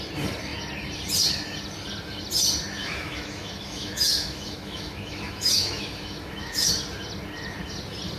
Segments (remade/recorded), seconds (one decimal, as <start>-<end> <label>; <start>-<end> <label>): 0.0-2.8 recorded; 2.8-6.7 remade; 6.7-8.2 recorded